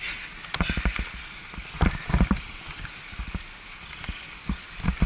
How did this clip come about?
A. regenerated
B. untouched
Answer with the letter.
B